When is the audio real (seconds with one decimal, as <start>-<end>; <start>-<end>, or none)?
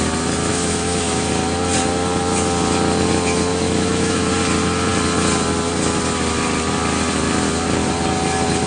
0.0-0.5; 1.3-3.5; 4.3-8.7